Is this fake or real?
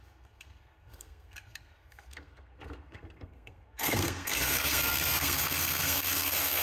fake